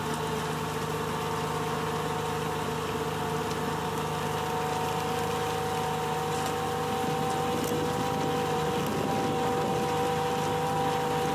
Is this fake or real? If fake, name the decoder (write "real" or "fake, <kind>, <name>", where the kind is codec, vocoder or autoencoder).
real